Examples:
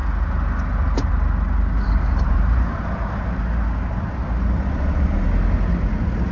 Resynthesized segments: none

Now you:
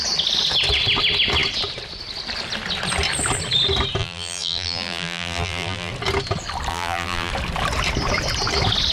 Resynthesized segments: 4.0-5.9 (vocoder, BigVGAN v2); 6.7-7.3

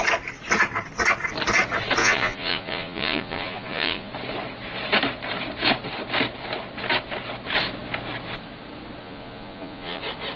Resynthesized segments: 2.0-4.1 (vocoder, Vocos); 9.0-10.0

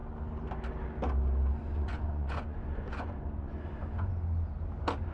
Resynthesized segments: 1.6-4.1 (vocoder, Vocos)

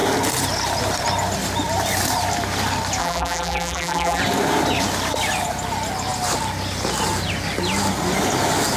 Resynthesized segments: 3.0-4.2 (vocoder, BigVGAN v2)

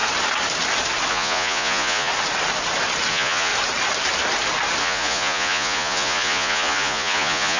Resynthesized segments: 1.1-2.1 (vocoder, Vocos); 3.1-3.5; 4.8-7.6

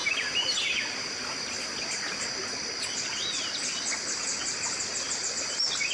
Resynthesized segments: none

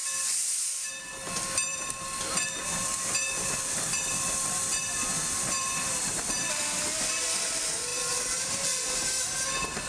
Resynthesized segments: 1.7-6.1 (vocoder, BigVGAN v2); 7.9-8.5